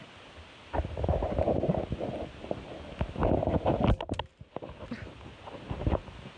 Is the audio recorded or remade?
recorded